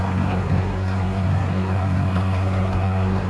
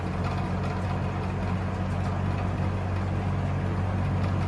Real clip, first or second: second